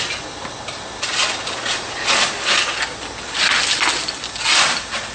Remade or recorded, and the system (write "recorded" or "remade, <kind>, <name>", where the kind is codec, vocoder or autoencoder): recorded